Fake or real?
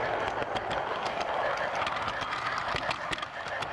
real